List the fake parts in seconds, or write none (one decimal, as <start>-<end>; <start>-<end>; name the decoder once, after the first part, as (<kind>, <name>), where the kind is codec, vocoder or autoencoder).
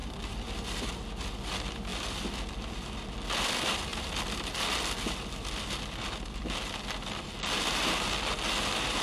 none